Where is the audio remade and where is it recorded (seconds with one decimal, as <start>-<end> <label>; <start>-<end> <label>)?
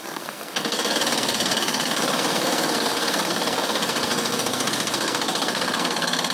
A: 0.0-6.3 remade